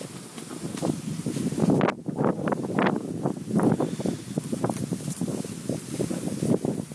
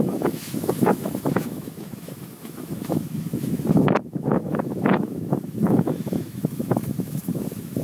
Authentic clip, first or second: first